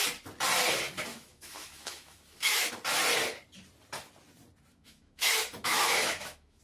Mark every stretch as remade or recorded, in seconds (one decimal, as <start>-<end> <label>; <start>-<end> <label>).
0.0-1.1 recorded; 1.1-2.7 remade; 2.7-4.7 recorded; 4.7-6.6 remade